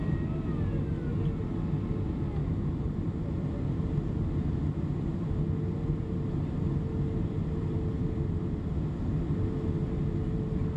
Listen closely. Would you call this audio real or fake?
real